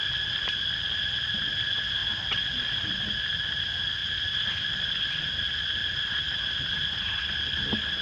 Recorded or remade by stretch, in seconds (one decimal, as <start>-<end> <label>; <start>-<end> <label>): 0.0-8.0 recorded

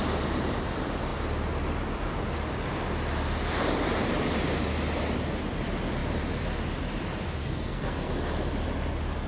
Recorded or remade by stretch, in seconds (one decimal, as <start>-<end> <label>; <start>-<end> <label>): 0.0-7.4 recorded; 7.4-8.1 remade; 8.1-9.3 recorded